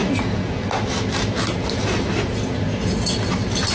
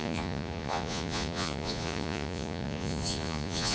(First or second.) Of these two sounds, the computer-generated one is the second